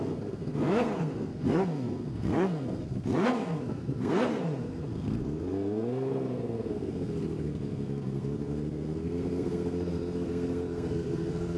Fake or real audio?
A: fake